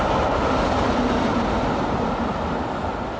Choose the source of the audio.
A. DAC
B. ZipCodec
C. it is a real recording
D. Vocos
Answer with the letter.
C